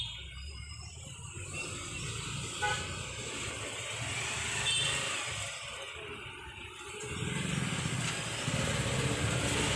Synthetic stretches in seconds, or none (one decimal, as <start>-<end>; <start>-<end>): none